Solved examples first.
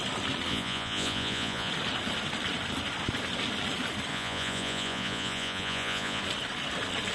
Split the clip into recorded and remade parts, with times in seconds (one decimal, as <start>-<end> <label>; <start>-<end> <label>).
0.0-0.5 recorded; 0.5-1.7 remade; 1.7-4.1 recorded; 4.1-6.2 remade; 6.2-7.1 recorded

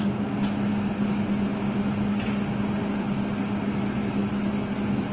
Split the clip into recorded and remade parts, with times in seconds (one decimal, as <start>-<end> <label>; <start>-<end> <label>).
0.0-0.7 remade; 0.7-3.8 recorded; 3.8-4.2 remade; 4.2-5.1 recorded

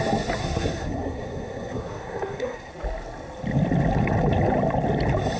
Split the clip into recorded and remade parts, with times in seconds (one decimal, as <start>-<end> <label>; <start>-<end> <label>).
0.0-0.4 recorded; 0.4-2.7 remade; 2.7-5.4 recorded

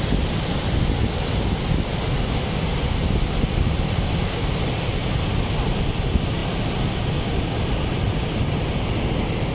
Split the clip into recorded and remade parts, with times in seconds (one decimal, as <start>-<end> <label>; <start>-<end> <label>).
0.0-9.5 recorded